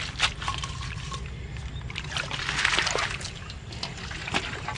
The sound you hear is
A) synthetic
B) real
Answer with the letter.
B